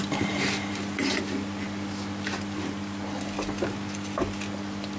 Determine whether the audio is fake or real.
real